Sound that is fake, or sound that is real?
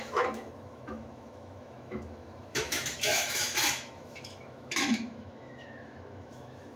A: fake